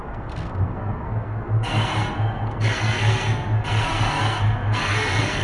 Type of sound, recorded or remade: remade